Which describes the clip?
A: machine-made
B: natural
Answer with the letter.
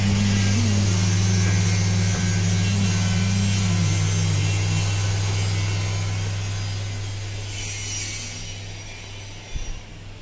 B